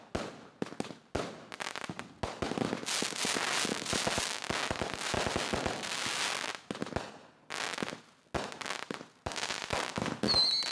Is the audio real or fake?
real